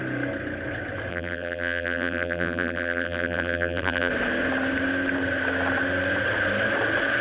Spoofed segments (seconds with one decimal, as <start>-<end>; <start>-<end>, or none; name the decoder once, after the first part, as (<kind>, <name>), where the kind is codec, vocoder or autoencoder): 1.1-4.1 (vocoder, BigVGAN v2)